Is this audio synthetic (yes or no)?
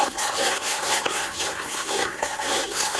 yes